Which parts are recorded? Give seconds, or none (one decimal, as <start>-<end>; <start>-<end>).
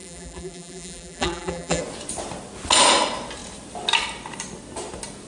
1.8-5.3